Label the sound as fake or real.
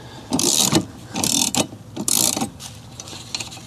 real